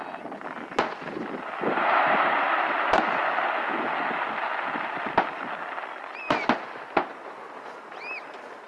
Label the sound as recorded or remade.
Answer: recorded